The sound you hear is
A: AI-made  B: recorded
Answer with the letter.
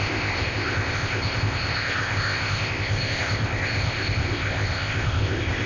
A